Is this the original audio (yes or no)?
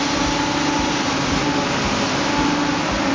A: yes